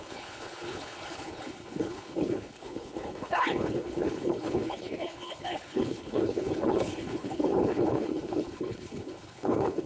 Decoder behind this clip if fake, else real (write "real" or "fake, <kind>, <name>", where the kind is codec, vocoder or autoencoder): fake, codec, HILCodec